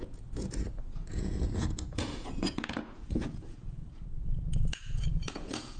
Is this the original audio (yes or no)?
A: no